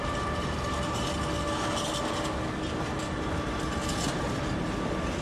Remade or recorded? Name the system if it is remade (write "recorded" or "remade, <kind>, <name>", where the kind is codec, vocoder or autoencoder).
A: recorded